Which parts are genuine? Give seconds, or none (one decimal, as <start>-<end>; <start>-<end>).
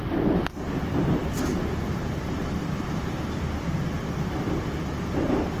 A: 0.0-1.2; 3.3-5.6